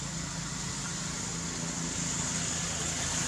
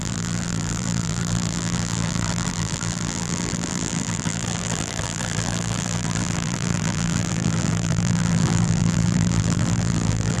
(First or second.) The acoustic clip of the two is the first